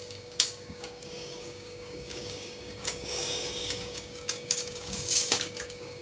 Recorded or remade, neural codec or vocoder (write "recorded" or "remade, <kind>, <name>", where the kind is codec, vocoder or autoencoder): remade, codec, DAC